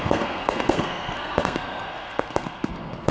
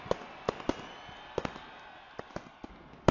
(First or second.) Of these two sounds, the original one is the second